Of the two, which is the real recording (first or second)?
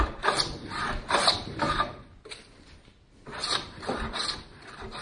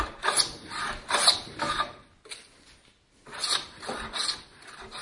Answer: second